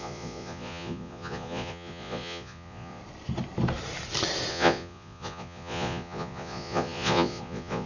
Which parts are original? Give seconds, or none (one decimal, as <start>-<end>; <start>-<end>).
3.0-4.5